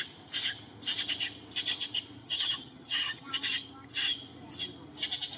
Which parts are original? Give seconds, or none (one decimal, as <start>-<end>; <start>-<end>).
0.0-2.2; 3.3-5.4